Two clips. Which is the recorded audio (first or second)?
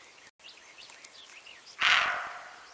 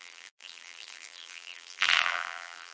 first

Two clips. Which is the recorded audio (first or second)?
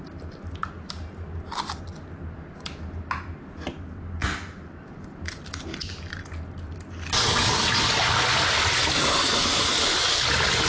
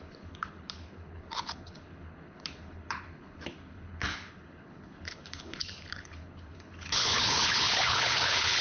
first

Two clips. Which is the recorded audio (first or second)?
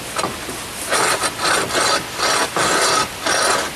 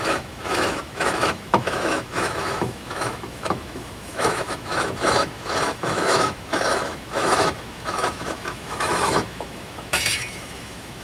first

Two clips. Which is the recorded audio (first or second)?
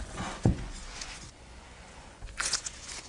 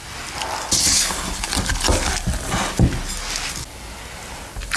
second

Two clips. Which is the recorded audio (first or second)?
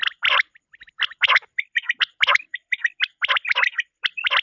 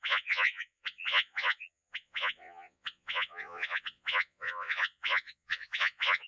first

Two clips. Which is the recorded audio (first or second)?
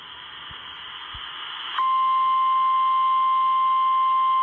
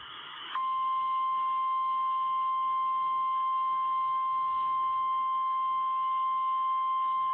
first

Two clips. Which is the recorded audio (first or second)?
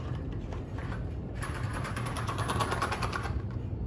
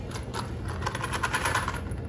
second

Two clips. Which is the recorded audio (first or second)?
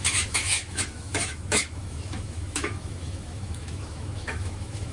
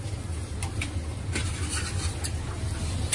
second